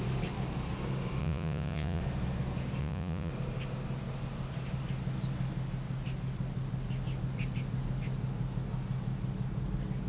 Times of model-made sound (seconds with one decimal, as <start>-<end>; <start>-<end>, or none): 1.2-2.0; 2.8-3.3